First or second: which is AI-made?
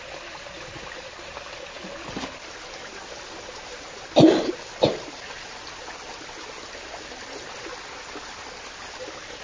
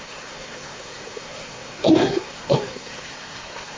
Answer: second